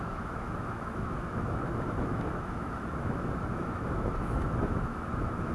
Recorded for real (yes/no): no